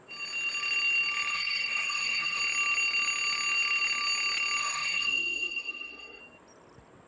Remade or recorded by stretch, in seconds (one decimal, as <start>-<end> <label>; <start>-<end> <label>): 0.0-1.3 recorded; 1.3-2.4 remade; 2.4-4.6 recorded; 4.6-6.2 remade; 6.2-7.1 recorded